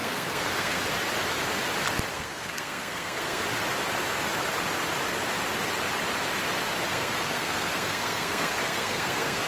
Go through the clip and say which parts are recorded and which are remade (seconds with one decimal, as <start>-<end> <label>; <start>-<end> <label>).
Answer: 0.0-0.8 remade; 0.8-2.1 recorded; 2.1-3.4 remade; 3.4-6.9 recorded; 6.9-9.5 remade